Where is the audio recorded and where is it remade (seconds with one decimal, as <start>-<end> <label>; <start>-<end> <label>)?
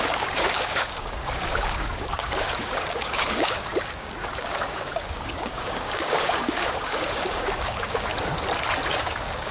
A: 0.0-8.1 remade; 8.1-8.9 recorded; 8.9-9.5 remade